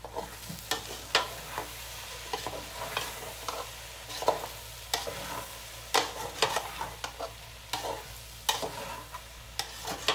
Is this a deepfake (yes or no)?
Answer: no